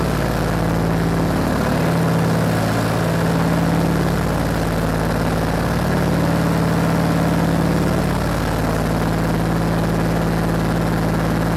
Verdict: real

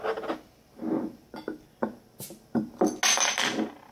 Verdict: real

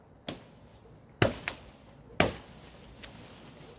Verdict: real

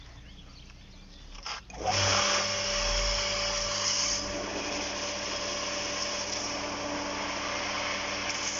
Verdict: real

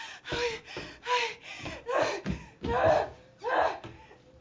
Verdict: real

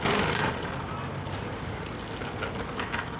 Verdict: real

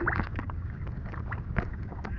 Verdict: fake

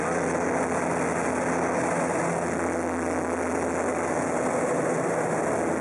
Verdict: real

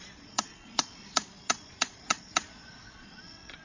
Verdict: fake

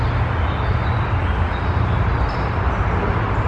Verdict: real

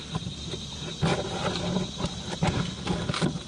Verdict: real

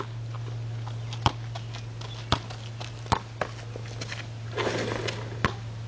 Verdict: real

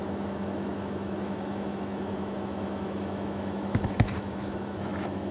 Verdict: fake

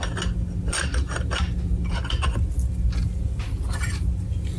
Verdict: real